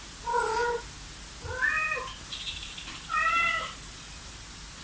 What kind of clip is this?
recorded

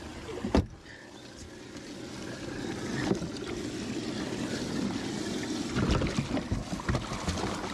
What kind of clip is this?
recorded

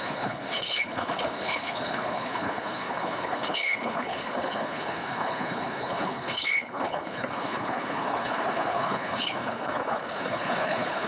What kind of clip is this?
remade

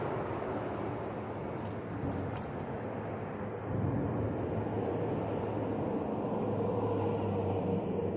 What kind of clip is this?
recorded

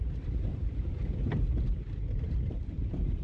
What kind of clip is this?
remade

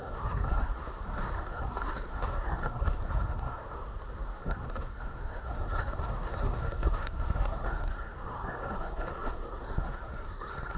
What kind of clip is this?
remade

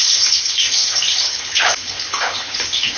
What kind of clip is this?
remade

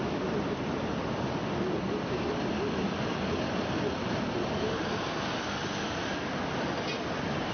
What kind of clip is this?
recorded